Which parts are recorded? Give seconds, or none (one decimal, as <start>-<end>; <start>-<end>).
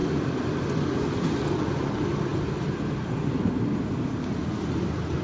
0.0-5.2